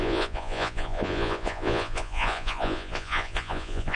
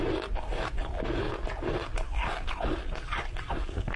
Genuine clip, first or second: second